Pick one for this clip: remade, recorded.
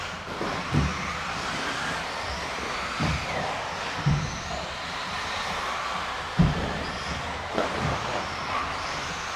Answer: recorded